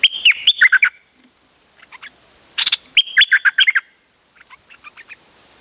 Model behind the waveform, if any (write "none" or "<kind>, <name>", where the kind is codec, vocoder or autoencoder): none